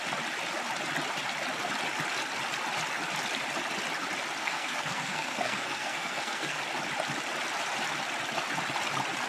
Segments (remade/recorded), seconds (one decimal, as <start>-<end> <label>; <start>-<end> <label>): 0.0-4.4 recorded; 4.4-6.6 remade; 6.6-9.3 recorded

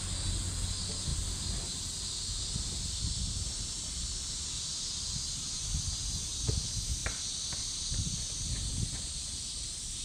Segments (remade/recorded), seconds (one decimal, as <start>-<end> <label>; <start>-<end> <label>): 0.0-10.0 recorded

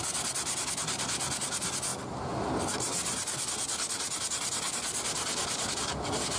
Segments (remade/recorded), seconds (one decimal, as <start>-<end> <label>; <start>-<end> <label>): 0.0-6.4 recorded

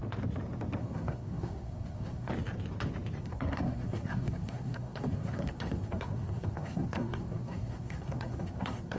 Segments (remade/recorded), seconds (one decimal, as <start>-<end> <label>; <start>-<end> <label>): 0.0-0.8 recorded; 0.8-2.3 remade; 2.3-3.2 recorded; 3.2-9.0 remade

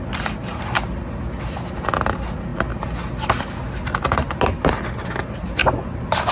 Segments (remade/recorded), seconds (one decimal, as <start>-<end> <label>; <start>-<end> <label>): 0.0-6.3 recorded